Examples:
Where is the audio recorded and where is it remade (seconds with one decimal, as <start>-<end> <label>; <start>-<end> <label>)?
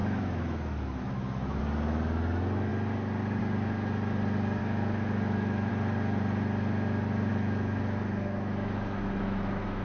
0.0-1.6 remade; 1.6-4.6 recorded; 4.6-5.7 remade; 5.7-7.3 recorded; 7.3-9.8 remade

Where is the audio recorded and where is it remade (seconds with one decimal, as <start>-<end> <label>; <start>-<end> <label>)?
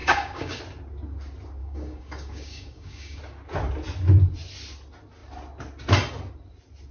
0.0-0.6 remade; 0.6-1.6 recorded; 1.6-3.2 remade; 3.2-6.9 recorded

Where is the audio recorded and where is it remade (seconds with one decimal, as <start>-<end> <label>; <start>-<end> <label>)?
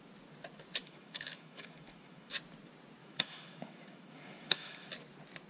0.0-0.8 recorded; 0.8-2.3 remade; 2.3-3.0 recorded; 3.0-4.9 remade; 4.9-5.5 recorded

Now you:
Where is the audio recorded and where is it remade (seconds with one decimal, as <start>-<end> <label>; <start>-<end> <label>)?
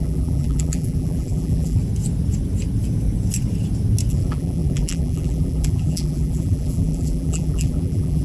0.0-1.8 remade; 1.8-4.1 recorded; 4.1-8.2 remade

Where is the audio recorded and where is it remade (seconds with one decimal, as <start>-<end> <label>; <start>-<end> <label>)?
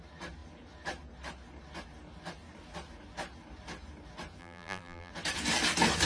0.0-4.4 recorded; 4.4-5.1 remade; 5.1-6.1 recorded